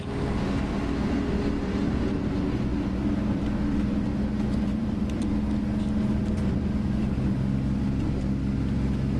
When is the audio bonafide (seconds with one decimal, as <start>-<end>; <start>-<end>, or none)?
0.0-2.7; 4.1-4.7; 5.3-9.2